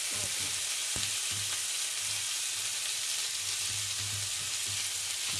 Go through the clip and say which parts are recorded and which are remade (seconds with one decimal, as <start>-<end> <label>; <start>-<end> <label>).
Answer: 0.0-5.4 recorded